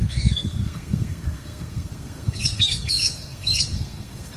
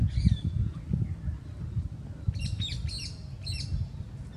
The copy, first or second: first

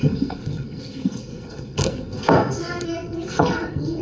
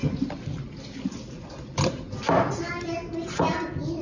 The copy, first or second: first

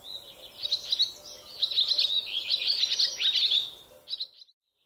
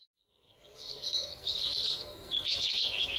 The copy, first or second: second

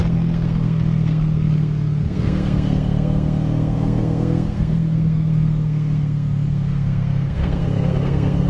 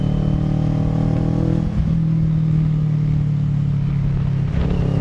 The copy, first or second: first